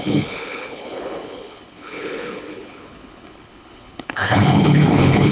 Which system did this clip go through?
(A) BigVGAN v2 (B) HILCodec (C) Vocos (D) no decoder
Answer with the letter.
B